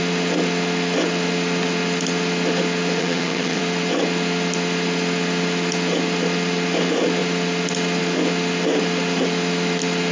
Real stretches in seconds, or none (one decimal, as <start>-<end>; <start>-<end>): 0.0-3.0; 3.6-10.1